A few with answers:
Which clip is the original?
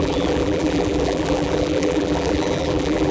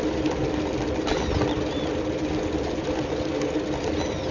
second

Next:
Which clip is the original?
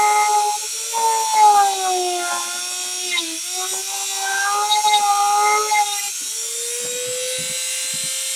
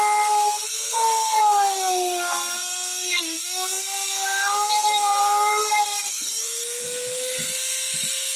first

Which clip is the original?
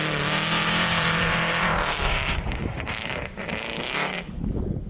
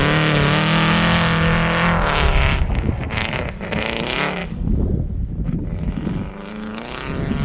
second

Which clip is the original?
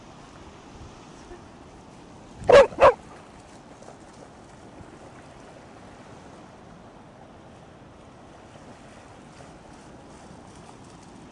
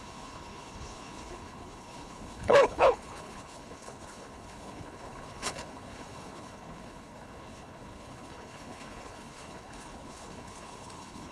first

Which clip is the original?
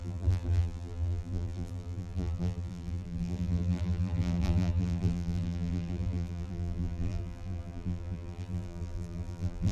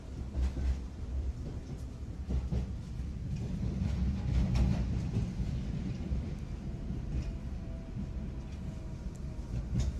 second